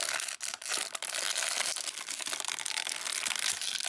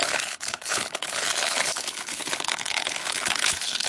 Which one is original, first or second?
first